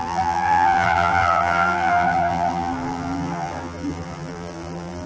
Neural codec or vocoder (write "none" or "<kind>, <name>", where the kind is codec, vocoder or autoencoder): vocoder, BigVGAN v2